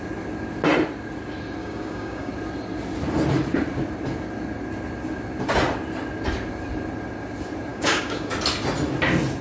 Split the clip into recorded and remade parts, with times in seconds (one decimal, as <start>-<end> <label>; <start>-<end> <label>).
0.0-1.6 recorded; 1.6-2.3 remade; 2.3-7.7 recorded; 7.7-8.3 remade; 8.3-9.4 recorded